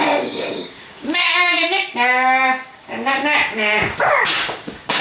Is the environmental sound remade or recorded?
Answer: remade